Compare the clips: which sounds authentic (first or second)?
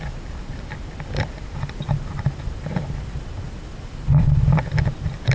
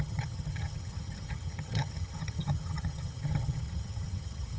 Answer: first